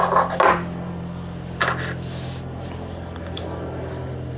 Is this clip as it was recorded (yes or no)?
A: no